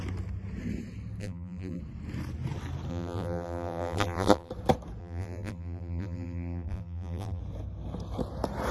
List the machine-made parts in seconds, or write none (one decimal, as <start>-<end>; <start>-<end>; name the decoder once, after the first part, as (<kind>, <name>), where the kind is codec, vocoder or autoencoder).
1.2-1.8 (vocoder, BigVGAN v2); 2.9-4.5; 5.0-7.4